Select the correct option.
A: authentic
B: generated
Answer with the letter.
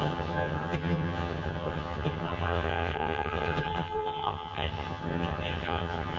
B